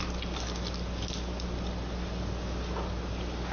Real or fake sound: real